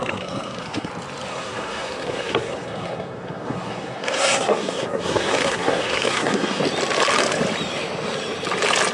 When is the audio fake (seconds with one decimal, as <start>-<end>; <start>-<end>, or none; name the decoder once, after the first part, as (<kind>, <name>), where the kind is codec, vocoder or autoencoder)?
0.0-0.9 (codec, SNAC); 1.3-6.6